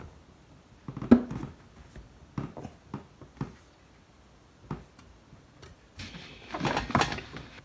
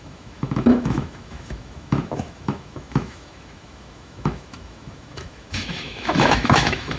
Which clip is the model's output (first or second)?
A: second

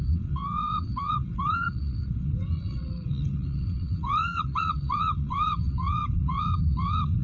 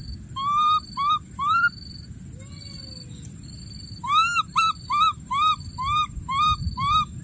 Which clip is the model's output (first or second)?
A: first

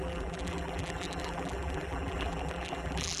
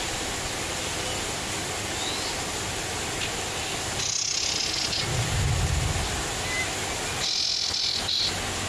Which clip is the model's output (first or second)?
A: first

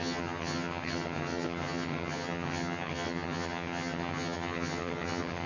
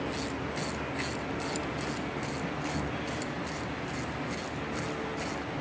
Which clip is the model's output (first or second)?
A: first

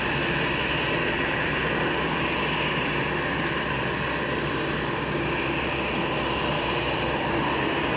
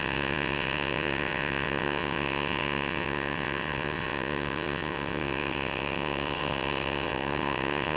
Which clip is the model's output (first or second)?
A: second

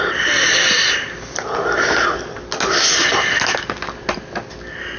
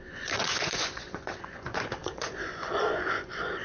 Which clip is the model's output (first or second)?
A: second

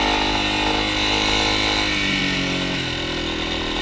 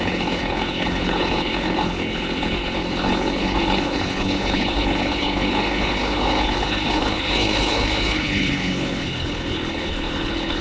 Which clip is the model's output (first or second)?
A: second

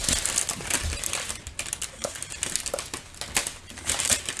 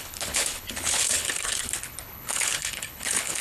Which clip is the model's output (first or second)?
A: second